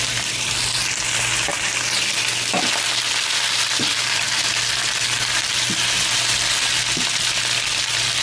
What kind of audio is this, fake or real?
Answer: fake